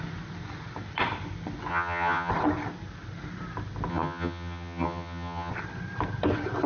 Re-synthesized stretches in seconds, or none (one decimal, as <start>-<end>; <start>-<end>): 1.7-2.3; 3.9-5.5